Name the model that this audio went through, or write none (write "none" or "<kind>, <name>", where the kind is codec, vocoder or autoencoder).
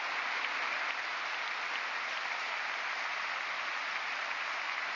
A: none